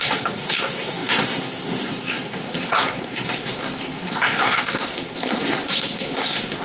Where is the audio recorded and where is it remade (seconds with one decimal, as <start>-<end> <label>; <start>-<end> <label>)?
0.0-6.6 remade